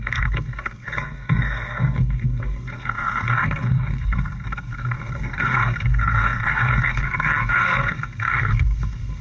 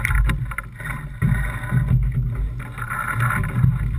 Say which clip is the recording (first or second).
second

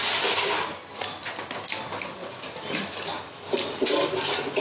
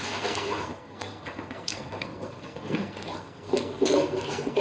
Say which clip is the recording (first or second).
first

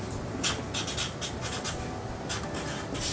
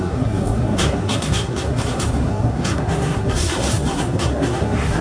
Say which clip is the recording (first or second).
first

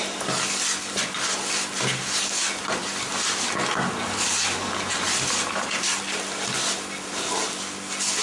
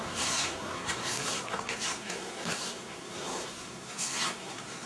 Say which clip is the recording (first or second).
first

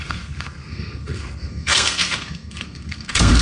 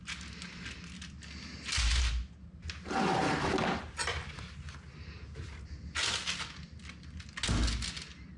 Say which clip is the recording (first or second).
second